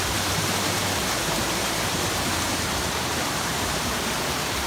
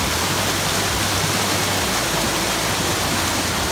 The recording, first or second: second